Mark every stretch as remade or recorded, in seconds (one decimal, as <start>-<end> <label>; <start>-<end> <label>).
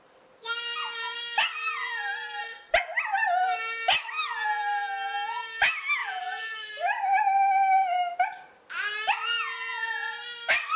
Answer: 0.0-6.0 recorded; 6.0-6.6 remade; 6.6-10.8 recorded